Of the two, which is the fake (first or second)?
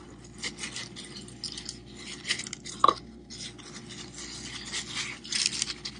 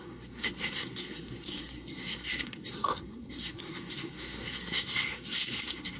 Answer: second